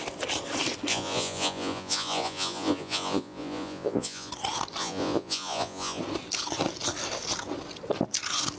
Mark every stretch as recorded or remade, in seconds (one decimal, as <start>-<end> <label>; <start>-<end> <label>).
0.0-0.9 recorded; 0.9-4.3 remade; 4.3-4.8 recorded; 4.8-6.0 remade; 6.0-8.6 recorded